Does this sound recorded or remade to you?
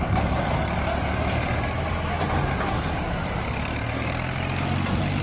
recorded